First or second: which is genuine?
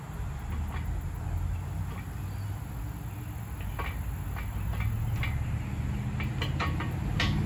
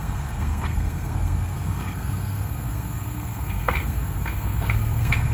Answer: first